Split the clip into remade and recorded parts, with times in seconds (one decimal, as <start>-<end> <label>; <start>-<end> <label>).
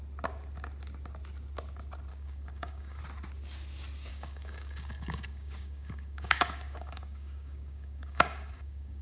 0.0-2.1 recorded; 2.1-3.0 remade; 3.0-4.1 recorded; 4.1-9.0 remade